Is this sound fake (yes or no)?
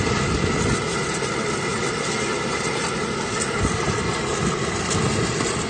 no